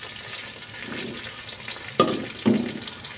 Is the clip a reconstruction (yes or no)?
no